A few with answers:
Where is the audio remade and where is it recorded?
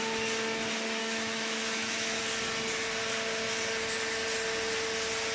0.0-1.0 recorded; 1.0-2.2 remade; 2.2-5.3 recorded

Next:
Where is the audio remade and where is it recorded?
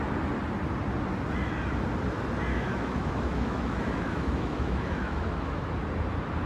0.0-2.5 recorded; 2.5-5.7 remade; 5.7-6.5 recorded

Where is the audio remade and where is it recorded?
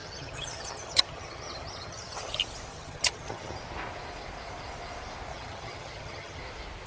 0.0-2.3 remade; 2.3-2.7 recorded; 2.7-3.6 remade; 3.6-5.3 recorded; 5.3-6.4 remade; 6.4-6.9 recorded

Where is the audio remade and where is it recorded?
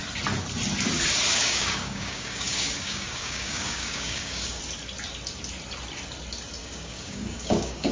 0.0-1.3 recorded; 1.3-4.6 remade; 4.6-6.6 recorded; 6.6-7.9 remade